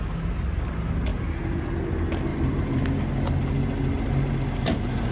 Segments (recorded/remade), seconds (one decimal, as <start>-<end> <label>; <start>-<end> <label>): 0.0-2.3 recorded; 2.3-3.4 remade; 3.4-5.1 recorded